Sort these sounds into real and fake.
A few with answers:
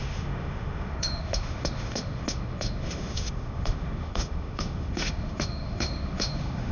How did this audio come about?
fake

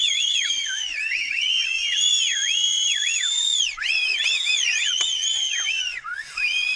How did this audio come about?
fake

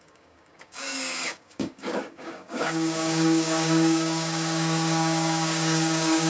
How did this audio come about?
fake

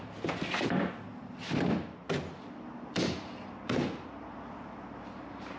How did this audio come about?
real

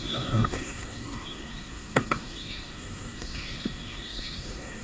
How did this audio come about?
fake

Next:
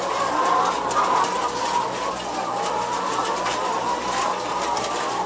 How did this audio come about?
real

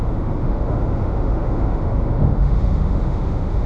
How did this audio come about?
fake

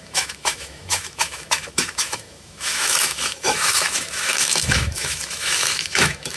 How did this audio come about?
fake